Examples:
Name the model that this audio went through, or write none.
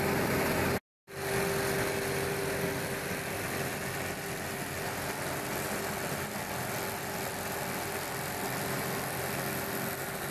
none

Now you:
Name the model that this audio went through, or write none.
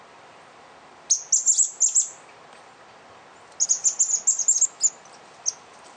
none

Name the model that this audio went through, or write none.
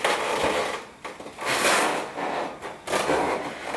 none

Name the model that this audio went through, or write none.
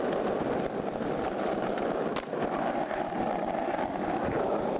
none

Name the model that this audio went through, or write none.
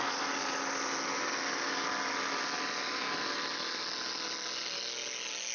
none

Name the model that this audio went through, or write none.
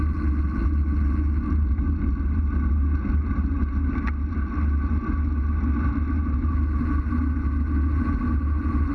none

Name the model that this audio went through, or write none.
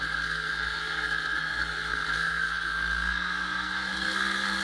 codec, SNAC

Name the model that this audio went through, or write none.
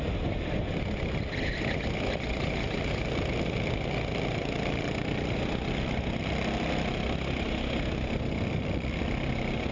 none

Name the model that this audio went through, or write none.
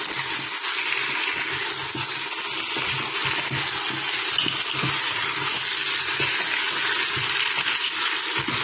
none